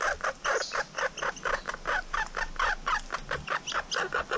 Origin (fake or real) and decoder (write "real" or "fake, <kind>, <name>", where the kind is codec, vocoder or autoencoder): real